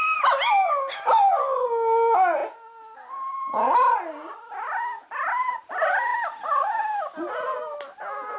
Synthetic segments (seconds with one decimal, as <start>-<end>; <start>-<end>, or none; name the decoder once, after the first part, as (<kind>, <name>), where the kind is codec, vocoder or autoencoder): none